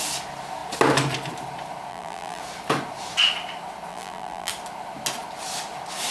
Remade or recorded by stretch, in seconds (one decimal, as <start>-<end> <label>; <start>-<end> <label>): 0.0-1.9 recorded; 1.9-2.4 remade; 2.4-3.9 recorded; 3.9-4.5 remade; 4.5-6.1 recorded